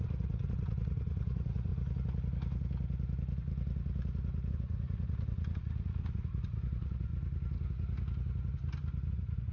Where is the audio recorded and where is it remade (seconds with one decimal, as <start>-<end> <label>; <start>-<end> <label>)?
0.0-1.7 remade; 1.7-4.5 recorded; 4.5-7.1 remade; 7.1-9.1 recorded; 9.1-9.5 remade

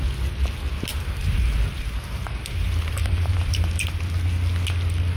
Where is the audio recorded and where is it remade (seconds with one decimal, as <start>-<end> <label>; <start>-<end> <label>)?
0.0-0.9 recorded; 0.9-4.0 remade; 4.0-5.2 recorded

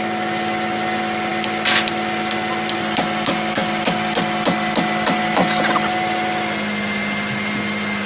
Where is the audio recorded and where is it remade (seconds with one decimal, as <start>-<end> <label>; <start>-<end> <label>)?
0.0-8.1 recorded